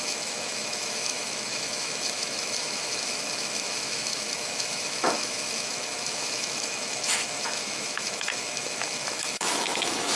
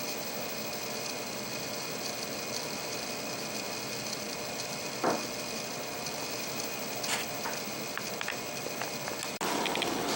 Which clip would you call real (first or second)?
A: second